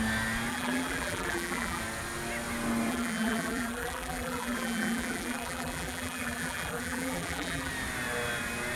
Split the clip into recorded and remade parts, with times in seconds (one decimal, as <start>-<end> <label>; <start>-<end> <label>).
0.0-0.5 recorded; 0.5-1.8 remade; 1.8-2.9 recorded; 2.9-7.7 remade; 7.7-8.8 recorded